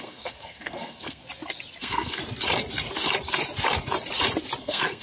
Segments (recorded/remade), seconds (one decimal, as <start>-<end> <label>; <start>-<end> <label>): 0.0-1.2 remade; 1.2-1.8 recorded; 1.8-2.2 remade; 2.2-4.6 recorded; 4.6-5.0 remade